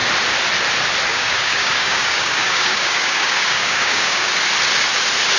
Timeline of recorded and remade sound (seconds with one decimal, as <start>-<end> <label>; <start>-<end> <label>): 0.0-1.1 recorded; 1.1-4.3 remade; 4.3-5.4 recorded